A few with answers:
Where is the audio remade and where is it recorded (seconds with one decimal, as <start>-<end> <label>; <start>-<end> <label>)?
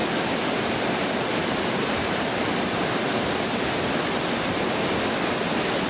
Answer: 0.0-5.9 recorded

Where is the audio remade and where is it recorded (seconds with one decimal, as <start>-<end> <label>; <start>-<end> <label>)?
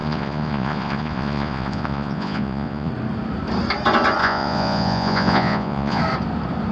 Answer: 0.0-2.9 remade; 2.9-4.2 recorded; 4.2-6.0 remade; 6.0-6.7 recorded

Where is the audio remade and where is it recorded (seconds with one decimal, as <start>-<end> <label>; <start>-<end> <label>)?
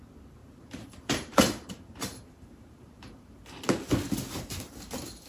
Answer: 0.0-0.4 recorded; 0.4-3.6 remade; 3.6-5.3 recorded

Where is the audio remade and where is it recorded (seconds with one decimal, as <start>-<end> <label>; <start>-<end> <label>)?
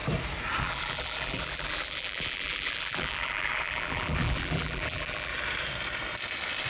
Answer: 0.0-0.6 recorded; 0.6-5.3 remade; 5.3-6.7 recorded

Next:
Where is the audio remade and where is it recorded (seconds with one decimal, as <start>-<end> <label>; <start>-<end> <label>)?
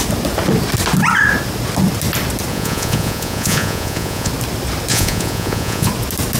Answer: 0.0-2.5 recorded; 2.5-4.3 remade; 4.3-4.9 recorded; 4.9-5.9 remade; 5.9-6.4 recorded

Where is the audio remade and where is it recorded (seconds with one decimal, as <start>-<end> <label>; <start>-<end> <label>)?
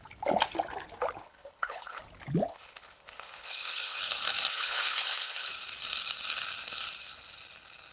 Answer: 0.0-1.2 recorded; 1.2-2.0 remade; 2.0-2.5 recorded; 2.5-4.0 remade; 4.0-4.5 recorded; 4.5-5.5 remade; 5.5-7.9 recorded